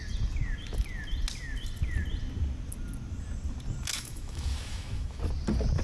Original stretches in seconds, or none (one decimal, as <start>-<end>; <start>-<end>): 0.0-3.9; 5.2-5.8